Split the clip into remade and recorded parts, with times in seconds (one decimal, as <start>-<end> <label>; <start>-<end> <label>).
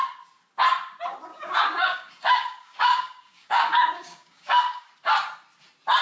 0.0-1.3 recorded; 1.3-4.9 remade; 4.9-6.0 recorded